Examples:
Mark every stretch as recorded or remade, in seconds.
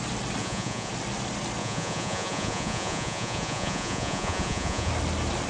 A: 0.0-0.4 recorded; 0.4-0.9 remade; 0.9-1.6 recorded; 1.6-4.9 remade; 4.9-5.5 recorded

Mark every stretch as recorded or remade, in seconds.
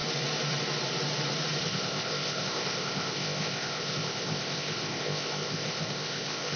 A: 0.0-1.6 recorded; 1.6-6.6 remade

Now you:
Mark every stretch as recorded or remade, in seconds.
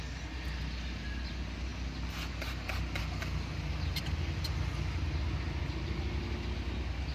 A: 0.0-7.1 recorded